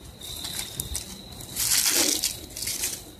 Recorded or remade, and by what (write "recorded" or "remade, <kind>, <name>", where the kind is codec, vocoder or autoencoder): recorded